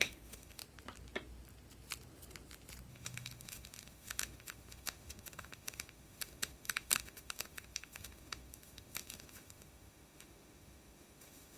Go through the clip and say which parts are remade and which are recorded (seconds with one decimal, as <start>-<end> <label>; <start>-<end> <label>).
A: 0.0-0.6 remade; 0.6-2.9 recorded; 2.9-11.6 remade